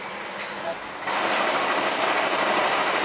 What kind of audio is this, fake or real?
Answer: real